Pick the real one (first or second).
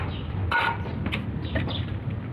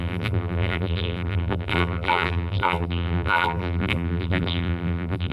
first